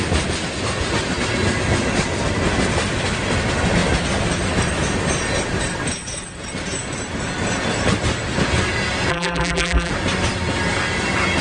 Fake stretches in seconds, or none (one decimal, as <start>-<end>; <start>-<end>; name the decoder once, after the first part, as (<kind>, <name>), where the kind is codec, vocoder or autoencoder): 9.1-9.9 (vocoder, BigVGAN v2)